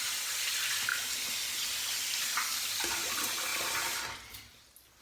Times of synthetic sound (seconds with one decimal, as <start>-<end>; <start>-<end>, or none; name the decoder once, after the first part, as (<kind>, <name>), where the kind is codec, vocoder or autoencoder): 0.9-1.5 (vocoder, BigVGAN v2)